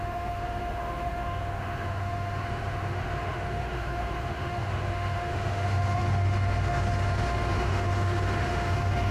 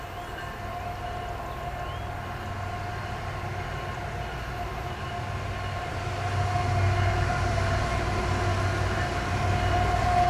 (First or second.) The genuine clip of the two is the second